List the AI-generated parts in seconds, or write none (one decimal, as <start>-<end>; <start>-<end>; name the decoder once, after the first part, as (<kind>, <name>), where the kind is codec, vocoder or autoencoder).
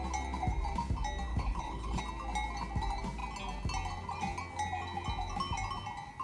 1.3-2.0 (codec, HILCodec)